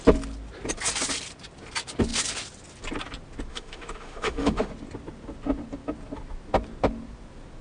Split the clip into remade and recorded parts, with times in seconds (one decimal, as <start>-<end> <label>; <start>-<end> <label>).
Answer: 0.0-3.5 recorded; 3.5-4.7 remade; 4.7-7.6 recorded